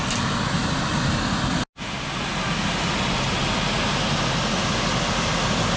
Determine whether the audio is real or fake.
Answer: real